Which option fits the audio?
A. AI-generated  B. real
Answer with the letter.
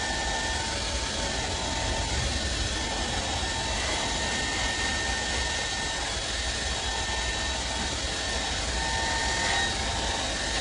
B